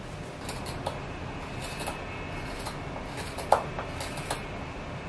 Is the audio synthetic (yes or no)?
no